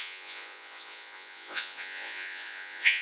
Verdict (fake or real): fake